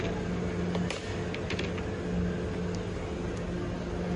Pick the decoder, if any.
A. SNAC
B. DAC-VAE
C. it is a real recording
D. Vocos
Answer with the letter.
C